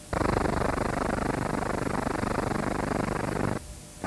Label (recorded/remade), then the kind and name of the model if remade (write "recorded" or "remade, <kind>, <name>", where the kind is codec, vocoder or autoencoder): recorded